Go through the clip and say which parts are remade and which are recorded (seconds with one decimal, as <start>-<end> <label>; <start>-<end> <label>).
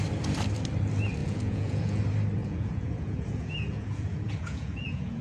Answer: 0.0-1.2 recorded; 1.2-2.0 remade; 2.0-2.4 recorded; 2.4-5.2 remade